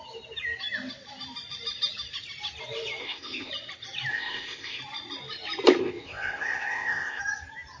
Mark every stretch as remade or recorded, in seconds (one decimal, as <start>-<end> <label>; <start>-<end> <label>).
0.0-3.0 recorded; 3.0-3.5 remade; 3.5-4.1 recorded; 4.1-4.8 remade; 4.8-5.8 recorded; 5.8-7.2 remade; 7.2-7.8 recorded